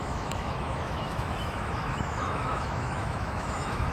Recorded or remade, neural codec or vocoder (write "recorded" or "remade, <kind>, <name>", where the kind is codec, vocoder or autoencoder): remade, autoencoder, DAC-VAE